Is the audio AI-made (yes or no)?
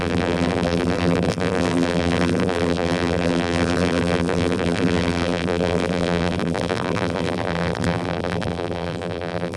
yes